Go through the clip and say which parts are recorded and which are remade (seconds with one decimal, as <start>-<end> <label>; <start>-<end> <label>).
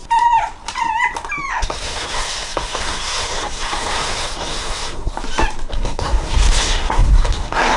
0.0-1.5 recorded; 1.5-5.1 remade; 5.1-5.7 recorded; 5.7-7.8 remade